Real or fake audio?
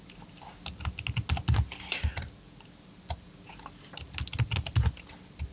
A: real